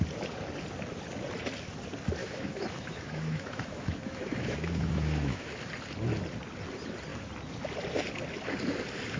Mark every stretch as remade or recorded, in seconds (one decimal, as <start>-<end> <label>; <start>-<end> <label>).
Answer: 0.0-2.2 recorded; 2.2-5.5 remade; 5.5-9.2 recorded